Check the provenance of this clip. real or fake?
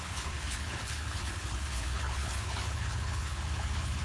fake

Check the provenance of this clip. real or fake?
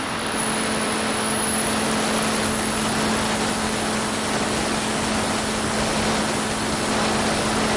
real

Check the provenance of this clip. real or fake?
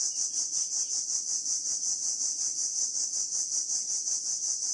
real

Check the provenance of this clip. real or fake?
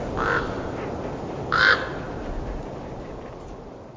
real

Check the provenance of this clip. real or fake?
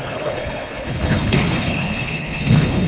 fake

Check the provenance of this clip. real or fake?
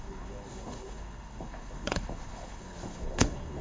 fake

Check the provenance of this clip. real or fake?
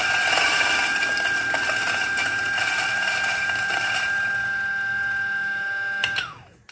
real